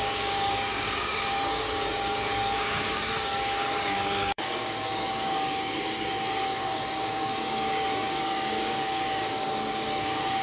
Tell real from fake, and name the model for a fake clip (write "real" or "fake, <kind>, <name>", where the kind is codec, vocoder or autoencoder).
fake, codec, DAC